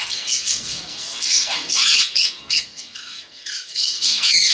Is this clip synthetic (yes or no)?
yes